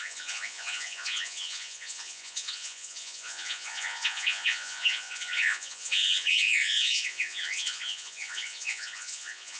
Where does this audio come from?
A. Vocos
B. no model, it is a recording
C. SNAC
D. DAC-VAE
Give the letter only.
A